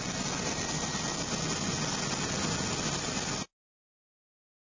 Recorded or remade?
recorded